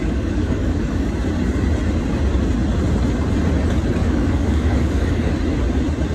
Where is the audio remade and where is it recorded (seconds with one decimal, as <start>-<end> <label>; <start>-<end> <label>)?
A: 0.0-1.1 remade; 1.1-4.0 recorded; 4.0-5.3 remade; 5.3-6.1 recorded